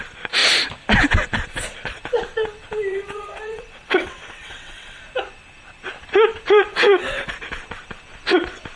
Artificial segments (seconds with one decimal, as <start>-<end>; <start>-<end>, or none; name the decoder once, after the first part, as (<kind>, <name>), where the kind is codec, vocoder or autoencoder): 2.9-5.0 (vocoder, WaveNeXt); 6.7-7.3